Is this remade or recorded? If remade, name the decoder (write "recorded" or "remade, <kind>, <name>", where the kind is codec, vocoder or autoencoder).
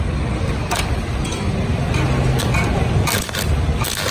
recorded